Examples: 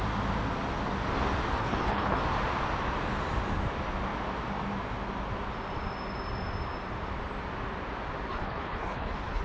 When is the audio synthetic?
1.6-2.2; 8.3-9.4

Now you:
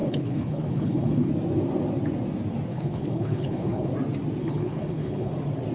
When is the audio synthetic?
0.0-1.3; 2.7-3.9; 4.4-5.3